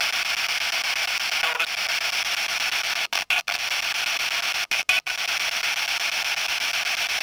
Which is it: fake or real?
real